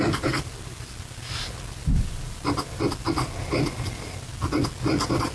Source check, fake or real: real